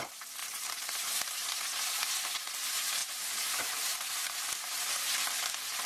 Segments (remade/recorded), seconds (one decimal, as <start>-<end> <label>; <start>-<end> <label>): 0.0-0.4 recorded; 0.4-1.6 remade; 1.6-3.0 recorded; 3.0-4.5 remade; 4.5-5.9 recorded